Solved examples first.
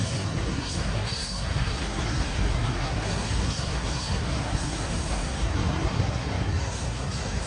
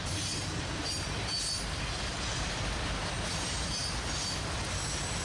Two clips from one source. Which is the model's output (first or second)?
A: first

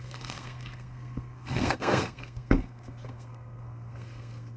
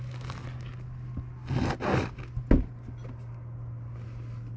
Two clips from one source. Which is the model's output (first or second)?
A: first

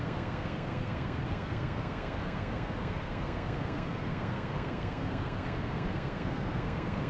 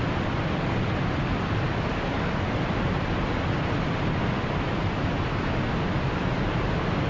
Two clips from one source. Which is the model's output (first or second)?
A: first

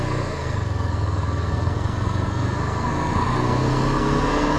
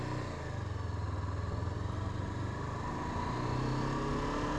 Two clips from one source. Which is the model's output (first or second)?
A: first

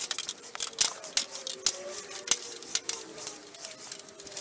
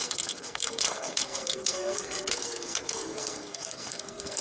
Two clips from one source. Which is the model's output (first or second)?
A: second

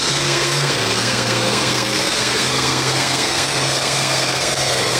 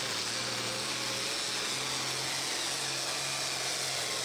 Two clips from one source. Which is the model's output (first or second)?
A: first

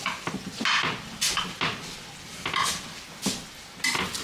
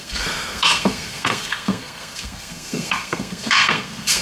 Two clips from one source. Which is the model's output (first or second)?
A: second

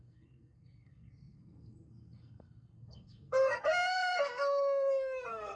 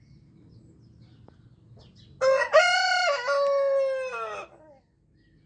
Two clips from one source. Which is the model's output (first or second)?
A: first